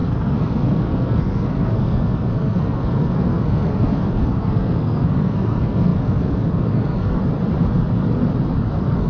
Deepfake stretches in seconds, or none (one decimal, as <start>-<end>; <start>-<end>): 0.0-7.2; 8.7-9.1